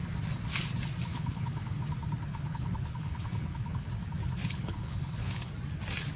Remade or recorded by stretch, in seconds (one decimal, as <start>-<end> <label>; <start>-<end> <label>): 0.0-1.1 recorded; 1.1-1.8 remade; 1.8-2.3 recorded; 2.3-3.9 remade; 3.9-4.4 recorded; 4.4-5.5 remade; 5.5-6.2 recorded